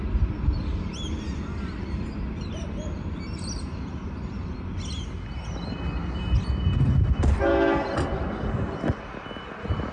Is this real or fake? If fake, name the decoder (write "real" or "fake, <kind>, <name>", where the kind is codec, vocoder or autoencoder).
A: real